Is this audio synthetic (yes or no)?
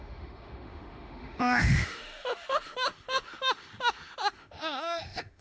yes